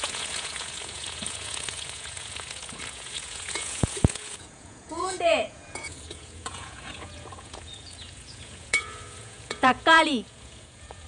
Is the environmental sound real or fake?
fake